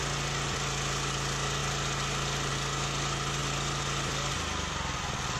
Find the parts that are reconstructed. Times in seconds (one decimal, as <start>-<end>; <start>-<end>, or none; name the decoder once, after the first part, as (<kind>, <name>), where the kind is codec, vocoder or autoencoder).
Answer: none

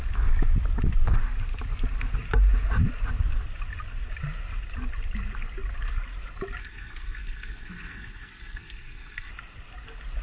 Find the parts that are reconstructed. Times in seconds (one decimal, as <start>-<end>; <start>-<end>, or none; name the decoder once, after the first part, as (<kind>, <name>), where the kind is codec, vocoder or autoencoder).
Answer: 6.6-9.3 (codec, SNAC)

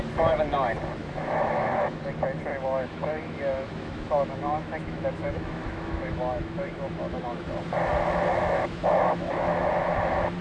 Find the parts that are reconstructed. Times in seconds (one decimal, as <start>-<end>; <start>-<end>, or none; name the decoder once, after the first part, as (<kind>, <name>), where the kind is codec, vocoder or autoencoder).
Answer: 1.0-2.0 (autoencoder, DAC-VAE); 2.5-7.5; 8.3-9.7

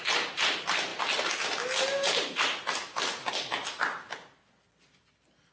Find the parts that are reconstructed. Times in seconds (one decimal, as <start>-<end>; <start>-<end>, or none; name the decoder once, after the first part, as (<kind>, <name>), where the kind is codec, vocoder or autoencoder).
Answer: none

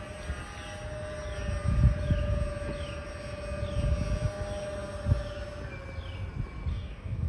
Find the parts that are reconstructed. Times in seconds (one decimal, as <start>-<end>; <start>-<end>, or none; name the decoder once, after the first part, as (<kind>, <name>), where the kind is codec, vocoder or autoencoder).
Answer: 6.7-7.3 (codec, DAC)